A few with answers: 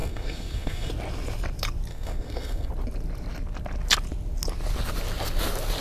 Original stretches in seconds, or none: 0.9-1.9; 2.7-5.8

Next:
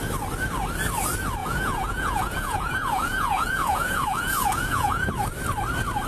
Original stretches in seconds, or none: 0.0-1.4; 5.1-6.1

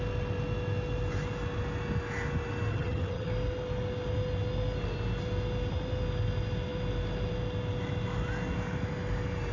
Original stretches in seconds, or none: 0.0-2.7; 3.3-9.5

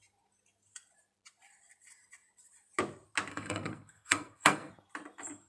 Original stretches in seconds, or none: 0.0-3.3; 4.7-5.5